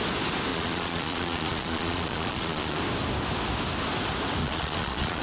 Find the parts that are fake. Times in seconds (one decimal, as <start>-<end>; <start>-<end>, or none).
0.5-2.8; 4.4-5.2